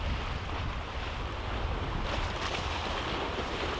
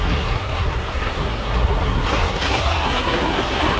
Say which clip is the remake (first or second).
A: second